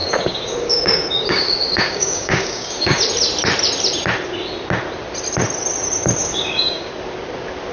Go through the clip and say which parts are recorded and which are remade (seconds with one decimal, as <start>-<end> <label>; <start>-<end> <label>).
0.0-3.0 remade; 3.0-6.2 recorded; 6.2-6.9 remade; 6.9-7.7 recorded

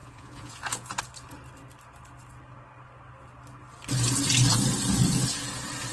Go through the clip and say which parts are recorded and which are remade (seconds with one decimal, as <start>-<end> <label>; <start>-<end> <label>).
0.0-1.0 remade; 1.0-5.9 recorded

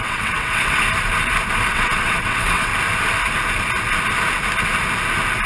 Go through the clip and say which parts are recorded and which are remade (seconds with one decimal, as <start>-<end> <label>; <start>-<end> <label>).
0.0-0.8 remade; 0.8-1.7 recorded; 1.7-2.7 remade; 2.7-5.5 recorded